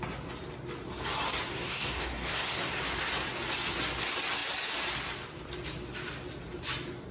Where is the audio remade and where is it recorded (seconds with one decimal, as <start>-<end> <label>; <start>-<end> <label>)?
0.0-1.5 recorded; 1.5-2.7 remade; 2.7-7.1 recorded